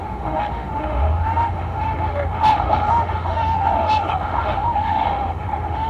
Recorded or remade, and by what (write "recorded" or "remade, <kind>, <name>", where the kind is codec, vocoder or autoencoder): remade, autoencoder, DAC-VAE